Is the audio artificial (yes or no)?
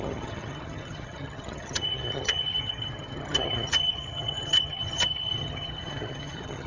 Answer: yes